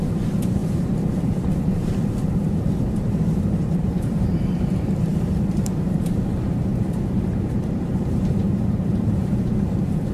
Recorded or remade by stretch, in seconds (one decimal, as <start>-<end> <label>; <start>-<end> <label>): 0.0-10.1 remade